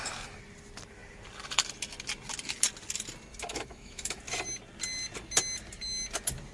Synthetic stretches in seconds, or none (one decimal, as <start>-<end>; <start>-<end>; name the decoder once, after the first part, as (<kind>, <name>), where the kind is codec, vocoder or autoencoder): 3.5-4.2 (autoencoder, DAC-VAE)